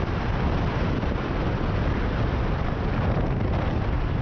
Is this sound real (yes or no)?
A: yes